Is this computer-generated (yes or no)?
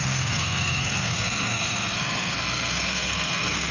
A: yes